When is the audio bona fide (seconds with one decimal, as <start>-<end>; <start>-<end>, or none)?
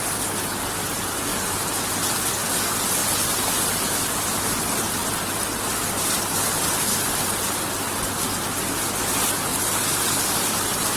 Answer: 0.0-11.0